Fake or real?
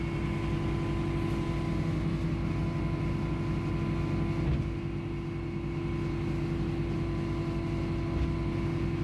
real